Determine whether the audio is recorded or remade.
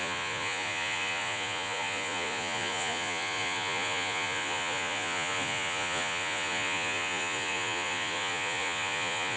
remade